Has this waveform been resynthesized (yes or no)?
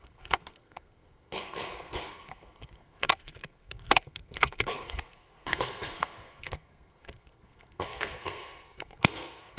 yes